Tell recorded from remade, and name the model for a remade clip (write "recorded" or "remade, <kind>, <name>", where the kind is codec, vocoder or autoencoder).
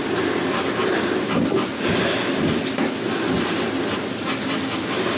recorded